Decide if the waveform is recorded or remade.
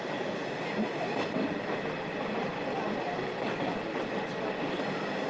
recorded